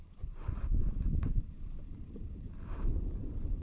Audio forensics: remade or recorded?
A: remade